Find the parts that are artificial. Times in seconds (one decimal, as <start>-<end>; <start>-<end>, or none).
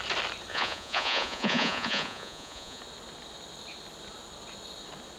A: 0.5-2.8